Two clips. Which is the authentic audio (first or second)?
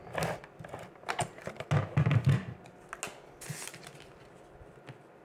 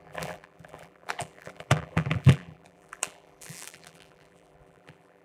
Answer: first